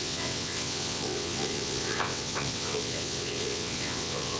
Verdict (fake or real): fake